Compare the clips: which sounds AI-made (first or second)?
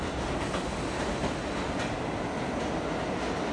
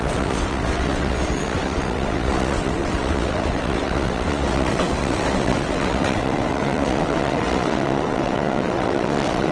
second